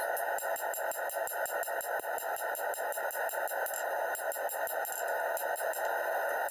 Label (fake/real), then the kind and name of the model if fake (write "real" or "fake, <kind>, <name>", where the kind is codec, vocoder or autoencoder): real